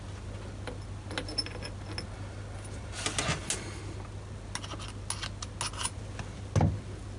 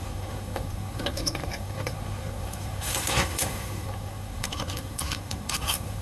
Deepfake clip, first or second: second